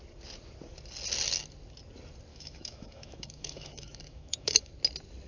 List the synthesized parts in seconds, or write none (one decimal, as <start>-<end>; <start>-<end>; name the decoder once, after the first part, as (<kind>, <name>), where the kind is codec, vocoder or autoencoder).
2.3-4.7 (autoencoder, DAC-VAE)